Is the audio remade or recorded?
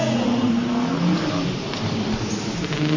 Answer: recorded